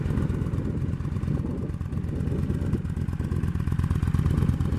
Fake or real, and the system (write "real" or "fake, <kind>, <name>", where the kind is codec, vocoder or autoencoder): real